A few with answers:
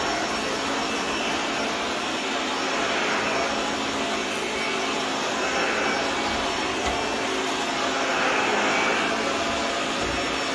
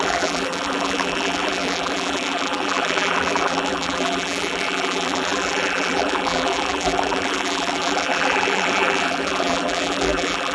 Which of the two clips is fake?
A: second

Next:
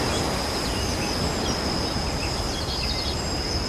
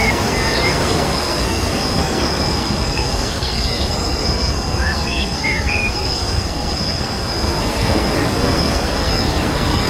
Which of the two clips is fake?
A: second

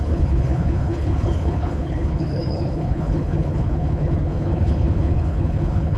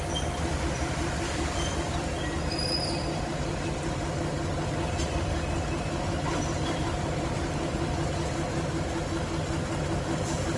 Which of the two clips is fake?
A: first